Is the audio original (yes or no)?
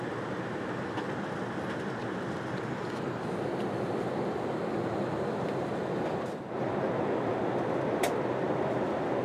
yes